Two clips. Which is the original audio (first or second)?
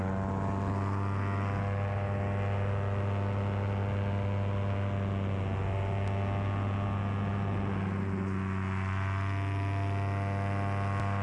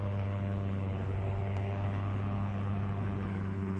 first